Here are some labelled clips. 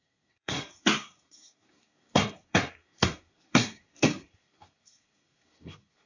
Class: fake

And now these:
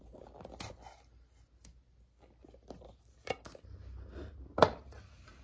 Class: real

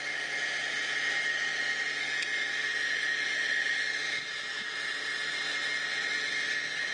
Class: real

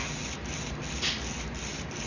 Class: real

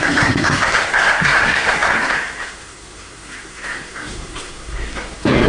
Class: fake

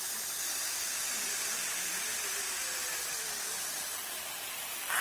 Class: real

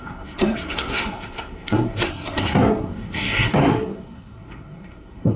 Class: fake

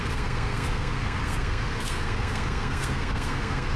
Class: fake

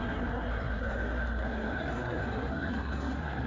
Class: fake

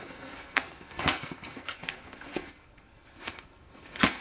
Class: fake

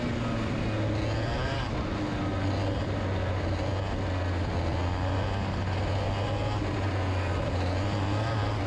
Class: real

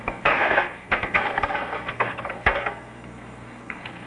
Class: fake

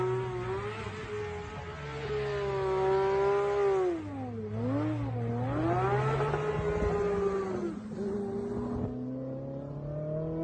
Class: real